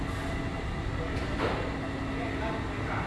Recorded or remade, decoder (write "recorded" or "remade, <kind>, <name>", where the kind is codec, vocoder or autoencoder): recorded